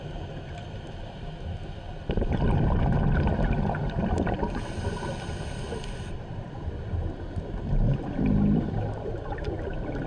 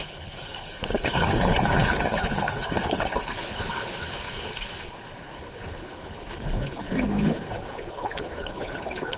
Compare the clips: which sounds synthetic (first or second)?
second